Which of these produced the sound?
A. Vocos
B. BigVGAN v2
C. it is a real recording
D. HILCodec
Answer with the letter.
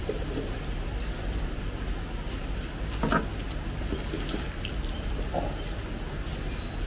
C